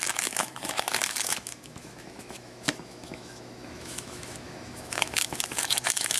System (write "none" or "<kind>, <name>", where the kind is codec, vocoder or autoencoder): autoencoder, DAC-VAE